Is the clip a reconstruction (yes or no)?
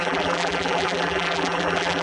yes